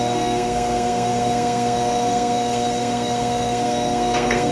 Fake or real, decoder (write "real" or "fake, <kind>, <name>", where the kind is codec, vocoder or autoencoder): fake, codec, SNAC